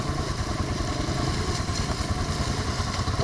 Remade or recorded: remade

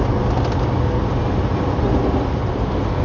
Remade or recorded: recorded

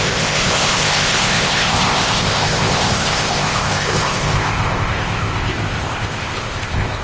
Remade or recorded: remade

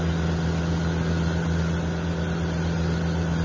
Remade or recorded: recorded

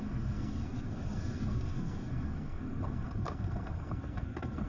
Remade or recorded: remade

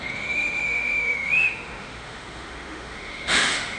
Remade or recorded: remade